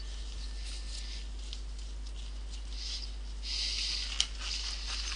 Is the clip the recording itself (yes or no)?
yes